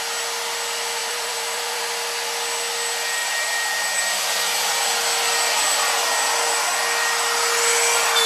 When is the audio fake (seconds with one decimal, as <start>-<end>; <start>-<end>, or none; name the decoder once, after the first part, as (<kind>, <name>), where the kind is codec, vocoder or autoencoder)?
1.0-1.8 (vocoder, BigVGAN v2); 3.2-4.7